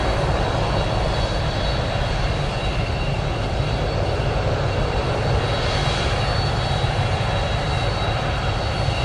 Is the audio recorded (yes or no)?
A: yes